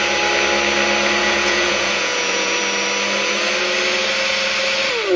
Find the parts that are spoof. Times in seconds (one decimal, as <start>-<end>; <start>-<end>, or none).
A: 1.2-2.6